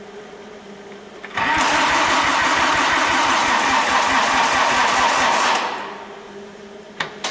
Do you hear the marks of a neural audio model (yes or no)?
no